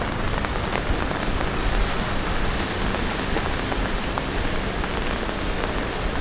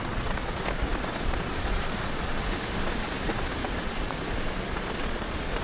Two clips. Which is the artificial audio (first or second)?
second